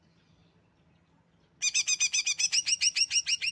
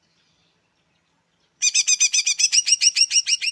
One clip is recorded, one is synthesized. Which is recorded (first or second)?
first